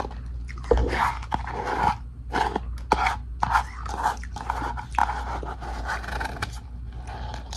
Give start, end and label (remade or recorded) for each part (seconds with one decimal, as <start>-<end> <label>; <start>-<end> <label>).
0.0-0.8 recorded; 0.8-1.4 remade; 1.4-7.6 recorded